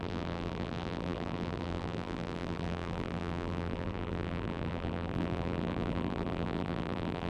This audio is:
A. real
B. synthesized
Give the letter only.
B